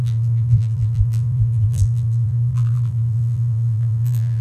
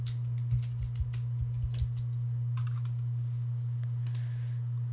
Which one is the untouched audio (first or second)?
second